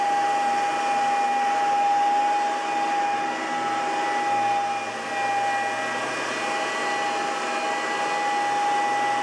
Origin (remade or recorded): recorded